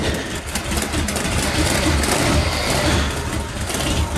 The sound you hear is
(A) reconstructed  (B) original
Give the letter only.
A